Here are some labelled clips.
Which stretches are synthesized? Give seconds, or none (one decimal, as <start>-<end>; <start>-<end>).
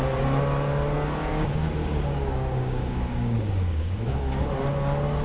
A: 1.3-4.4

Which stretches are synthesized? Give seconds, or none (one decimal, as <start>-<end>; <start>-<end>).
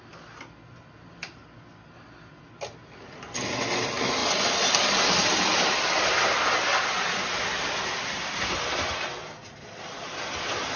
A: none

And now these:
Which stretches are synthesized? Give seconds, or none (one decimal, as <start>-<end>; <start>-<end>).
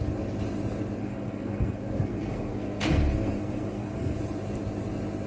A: 1.0-4.2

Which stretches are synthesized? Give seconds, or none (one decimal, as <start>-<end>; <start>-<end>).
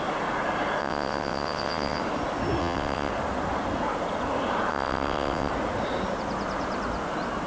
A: 0.8-2.0; 2.6-3.1; 4.7-5.5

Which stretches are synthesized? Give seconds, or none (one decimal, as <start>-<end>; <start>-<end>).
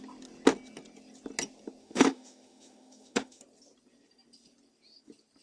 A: 1.8-3.4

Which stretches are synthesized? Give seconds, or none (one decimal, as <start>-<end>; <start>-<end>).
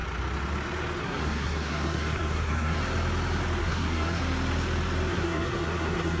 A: 1.0-2.8; 3.6-4.2; 5.1-6.2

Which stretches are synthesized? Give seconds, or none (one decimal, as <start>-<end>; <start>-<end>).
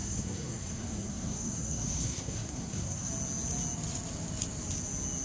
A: 0.0-3.1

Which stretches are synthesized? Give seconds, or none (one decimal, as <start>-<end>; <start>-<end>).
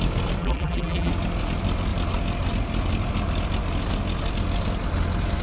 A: 0.4-1.1